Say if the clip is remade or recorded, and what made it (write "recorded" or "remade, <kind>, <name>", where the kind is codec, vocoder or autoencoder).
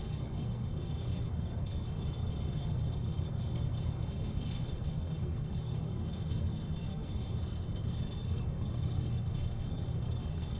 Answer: remade, codec, SNAC